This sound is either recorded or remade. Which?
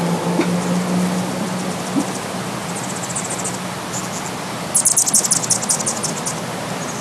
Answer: recorded